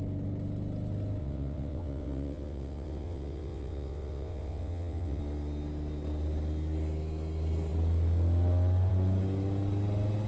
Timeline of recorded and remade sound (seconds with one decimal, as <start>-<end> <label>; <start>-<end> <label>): 0.0-1.2 recorded; 1.2-5.2 remade; 5.2-10.3 recorded